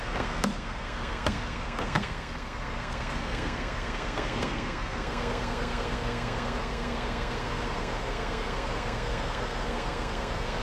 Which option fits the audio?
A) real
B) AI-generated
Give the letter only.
B